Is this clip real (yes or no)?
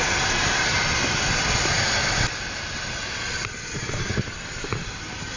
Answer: yes